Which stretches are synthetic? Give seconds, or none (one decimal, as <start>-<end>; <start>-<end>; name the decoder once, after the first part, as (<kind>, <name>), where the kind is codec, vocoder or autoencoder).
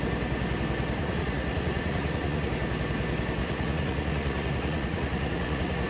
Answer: 1.0-2.5 (vocoder, Vocos); 3.4-5.9